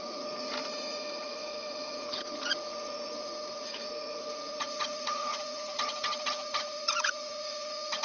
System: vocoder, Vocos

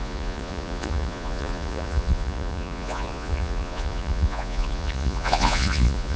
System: vocoder, Vocos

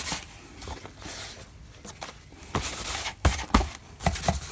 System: none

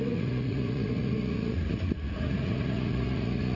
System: vocoder, Vocos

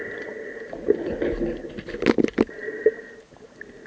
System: none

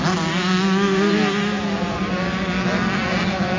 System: none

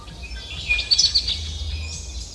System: none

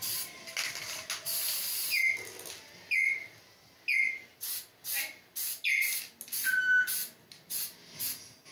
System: none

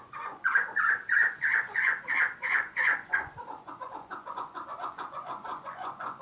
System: vocoder, Vocos